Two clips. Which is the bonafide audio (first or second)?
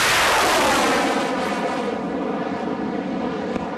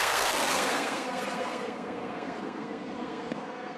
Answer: first